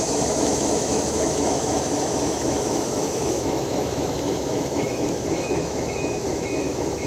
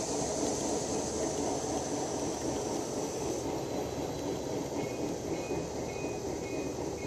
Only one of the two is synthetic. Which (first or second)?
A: first